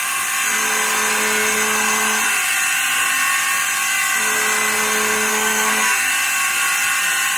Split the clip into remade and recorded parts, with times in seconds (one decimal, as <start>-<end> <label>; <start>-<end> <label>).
0.0-5.3 recorded; 5.3-6.1 remade; 6.1-7.4 recorded